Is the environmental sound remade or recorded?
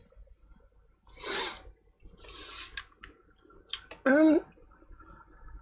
recorded